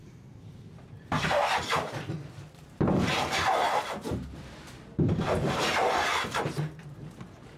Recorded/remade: remade